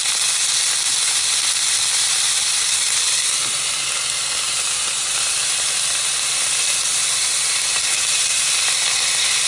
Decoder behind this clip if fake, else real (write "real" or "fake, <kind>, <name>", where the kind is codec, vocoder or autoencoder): real